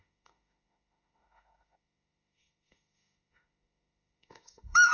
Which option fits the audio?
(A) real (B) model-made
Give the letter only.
B